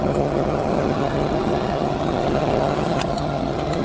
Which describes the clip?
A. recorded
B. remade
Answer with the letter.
B